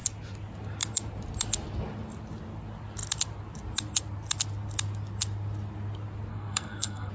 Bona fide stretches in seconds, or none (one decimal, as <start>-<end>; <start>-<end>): 0.0-6.3